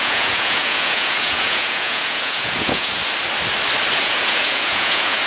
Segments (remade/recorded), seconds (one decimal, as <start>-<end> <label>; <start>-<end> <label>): 0.0-3.0 remade; 3.0-4.0 recorded; 4.0-5.3 remade